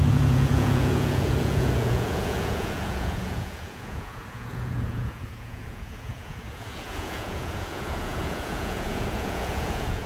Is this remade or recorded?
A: remade